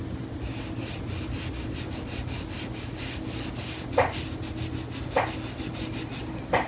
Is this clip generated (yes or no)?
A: no